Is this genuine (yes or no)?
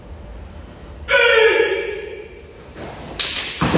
yes